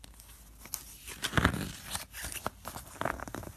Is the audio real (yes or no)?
yes